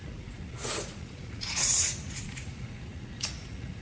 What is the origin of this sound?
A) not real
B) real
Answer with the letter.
A